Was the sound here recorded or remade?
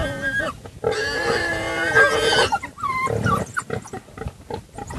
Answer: recorded